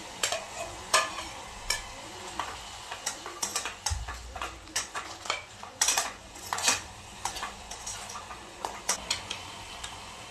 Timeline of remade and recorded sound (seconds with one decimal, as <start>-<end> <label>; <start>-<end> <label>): 0.0-10.3 remade

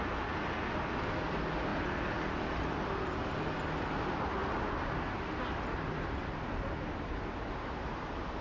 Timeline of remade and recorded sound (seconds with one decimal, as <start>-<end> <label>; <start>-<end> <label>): 0.0-8.4 recorded

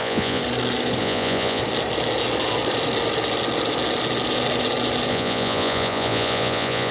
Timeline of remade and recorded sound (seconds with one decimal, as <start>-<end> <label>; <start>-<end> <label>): 0.0-0.4 remade; 0.4-1.0 recorded; 1.0-1.6 remade; 1.6-5.1 recorded; 5.1-6.9 remade